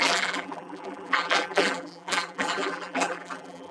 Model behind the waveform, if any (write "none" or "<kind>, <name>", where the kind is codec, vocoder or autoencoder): vocoder, BigVGAN v2